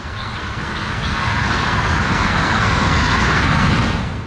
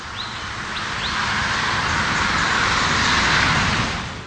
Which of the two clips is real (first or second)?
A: second